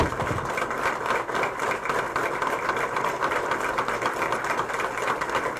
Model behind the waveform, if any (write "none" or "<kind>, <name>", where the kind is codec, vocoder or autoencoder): none